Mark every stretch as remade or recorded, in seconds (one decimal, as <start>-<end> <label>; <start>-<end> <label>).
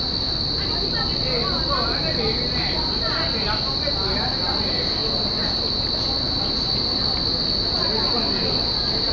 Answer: 0.0-9.1 recorded